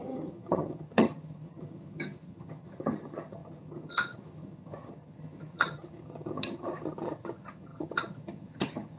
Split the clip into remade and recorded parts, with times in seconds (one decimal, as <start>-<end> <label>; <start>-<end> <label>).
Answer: 0.0-9.0 remade

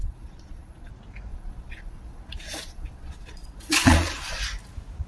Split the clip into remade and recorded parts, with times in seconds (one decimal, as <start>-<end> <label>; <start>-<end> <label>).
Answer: 0.0-0.9 remade; 0.9-1.3 recorded; 1.3-4.4 remade; 4.4-5.1 recorded

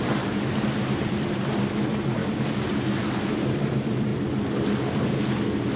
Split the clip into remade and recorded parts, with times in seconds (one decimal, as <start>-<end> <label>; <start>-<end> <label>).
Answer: 0.0-2.2 remade; 2.2-3.0 recorded; 3.0-4.1 remade; 4.1-4.9 recorded; 4.9-5.8 remade

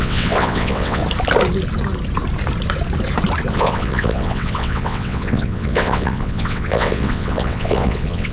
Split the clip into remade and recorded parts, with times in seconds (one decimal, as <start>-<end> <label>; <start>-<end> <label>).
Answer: 0.0-1.0 remade; 1.0-3.5 recorded; 3.5-8.3 remade